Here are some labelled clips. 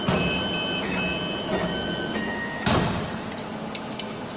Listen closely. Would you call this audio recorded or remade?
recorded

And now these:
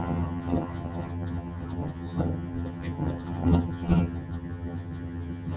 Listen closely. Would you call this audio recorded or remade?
remade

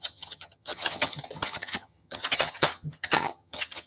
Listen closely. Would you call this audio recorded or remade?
remade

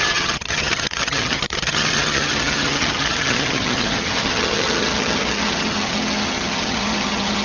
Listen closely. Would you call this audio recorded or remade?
remade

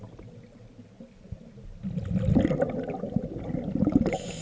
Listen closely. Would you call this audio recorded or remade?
recorded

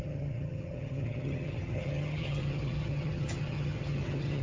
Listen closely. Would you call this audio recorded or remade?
remade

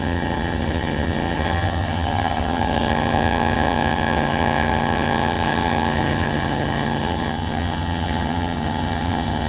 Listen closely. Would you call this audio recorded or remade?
remade